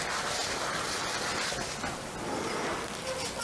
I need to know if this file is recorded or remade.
recorded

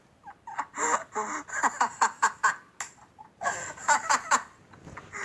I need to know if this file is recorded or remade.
recorded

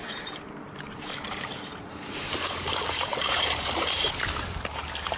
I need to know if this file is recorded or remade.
remade